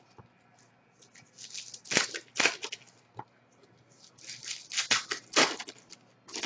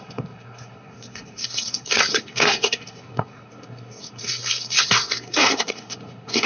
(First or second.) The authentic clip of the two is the first